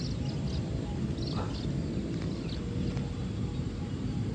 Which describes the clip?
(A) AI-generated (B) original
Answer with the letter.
B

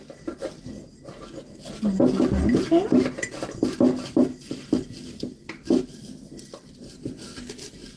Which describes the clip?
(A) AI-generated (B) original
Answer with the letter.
B